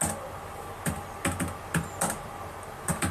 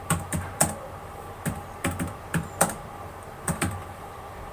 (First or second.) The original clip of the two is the first